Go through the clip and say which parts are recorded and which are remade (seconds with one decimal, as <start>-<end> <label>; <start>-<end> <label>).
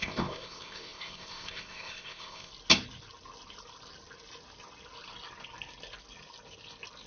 0.0-2.5 remade; 2.5-7.1 recorded